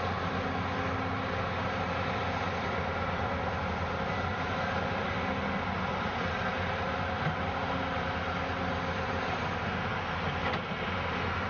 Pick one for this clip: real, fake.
real